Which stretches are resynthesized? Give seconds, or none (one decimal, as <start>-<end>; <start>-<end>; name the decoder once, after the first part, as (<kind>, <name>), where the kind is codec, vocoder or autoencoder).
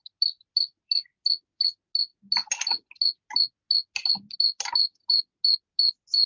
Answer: none